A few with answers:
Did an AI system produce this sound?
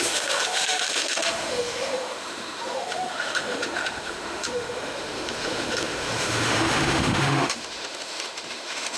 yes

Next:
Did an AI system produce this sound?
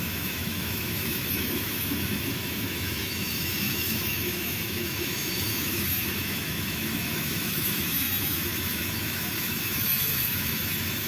yes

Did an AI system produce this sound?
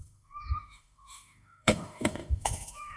yes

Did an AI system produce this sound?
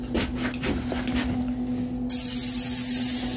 no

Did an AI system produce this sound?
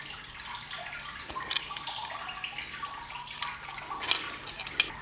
no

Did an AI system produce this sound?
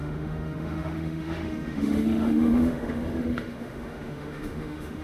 yes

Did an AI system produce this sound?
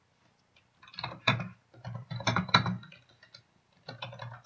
no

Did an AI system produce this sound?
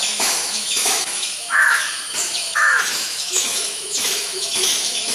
yes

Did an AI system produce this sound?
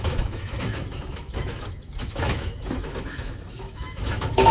yes